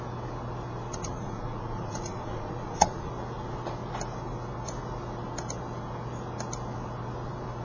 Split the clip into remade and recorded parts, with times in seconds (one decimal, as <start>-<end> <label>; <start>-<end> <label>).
0.0-0.9 recorded; 0.9-3.1 remade; 3.1-7.6 recorded